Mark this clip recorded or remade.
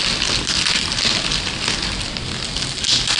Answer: recorded